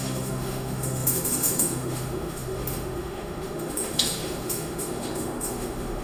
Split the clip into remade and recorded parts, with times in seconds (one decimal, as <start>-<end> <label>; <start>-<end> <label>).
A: 0.0-6.0 remade